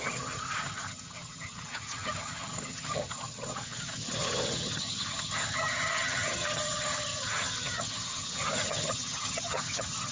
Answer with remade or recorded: remade